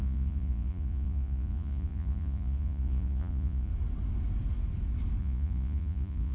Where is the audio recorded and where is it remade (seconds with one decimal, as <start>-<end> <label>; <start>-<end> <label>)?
0.0-3.7 remade; 3.7-5.2 recorded; 5.2-6.3 remade

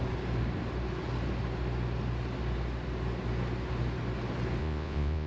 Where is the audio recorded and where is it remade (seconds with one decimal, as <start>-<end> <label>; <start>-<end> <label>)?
0.0-4.6 recorded; 4.6-5.3 remade

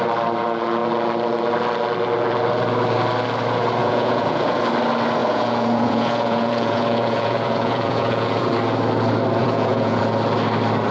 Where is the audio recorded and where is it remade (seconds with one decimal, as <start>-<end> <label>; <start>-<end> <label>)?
0.0-3.8 recorded; 3.8-4.6 remade; 4.6-5.2 recorded; 5.2-8.5 remade; 8.5-9.4 recorded; 9.4-10.0 remade; 10.0-10.9 recorded

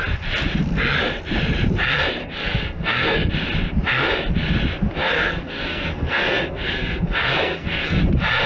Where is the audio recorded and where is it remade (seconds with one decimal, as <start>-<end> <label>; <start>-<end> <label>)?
0.0-2.2 recorded; 2.2-3.3 remade; 3.3-5.0 recorded; 5.0-8.0 remade; 8.0-8.5 recorded

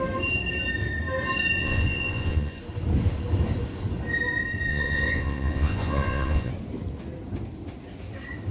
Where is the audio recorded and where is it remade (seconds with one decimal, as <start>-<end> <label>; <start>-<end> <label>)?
0.0-1.6 recorded; 1.6-2.6 remade; 2.6-4.7 recorded; 4.7-6.5 remade; 6.5-8.5 recorded

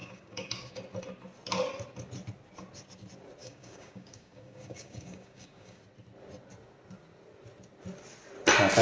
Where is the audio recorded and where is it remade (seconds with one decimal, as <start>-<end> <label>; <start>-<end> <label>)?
0.0-0.8 remade; 0.8-3.4 recorded; 3.4-5.8 remade; 5.8-8.8 recorded